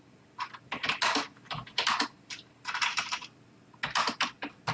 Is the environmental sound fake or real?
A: real